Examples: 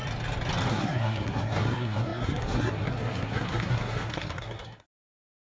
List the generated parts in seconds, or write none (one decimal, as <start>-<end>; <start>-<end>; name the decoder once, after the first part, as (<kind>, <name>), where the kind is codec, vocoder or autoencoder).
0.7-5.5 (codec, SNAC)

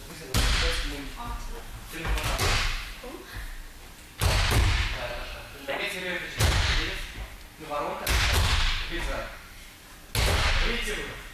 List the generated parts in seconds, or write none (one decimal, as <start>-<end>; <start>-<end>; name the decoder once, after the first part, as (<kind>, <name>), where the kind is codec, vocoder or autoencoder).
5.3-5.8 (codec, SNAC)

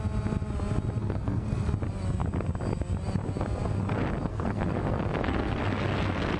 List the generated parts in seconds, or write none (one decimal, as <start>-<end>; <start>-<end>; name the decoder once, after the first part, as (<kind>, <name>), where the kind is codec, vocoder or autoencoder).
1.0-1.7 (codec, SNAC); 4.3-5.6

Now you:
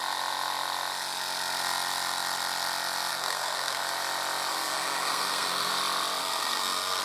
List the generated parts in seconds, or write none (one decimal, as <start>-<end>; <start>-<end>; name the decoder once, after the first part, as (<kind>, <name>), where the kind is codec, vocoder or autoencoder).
3.1-3.8 (codec, SNAC); 4.5-5.7; 6.2-7.0